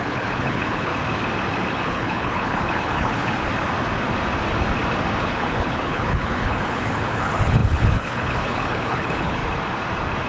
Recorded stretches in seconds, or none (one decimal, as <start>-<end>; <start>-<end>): 0.9-1.7; 3.5-5.2; 9.4-10.3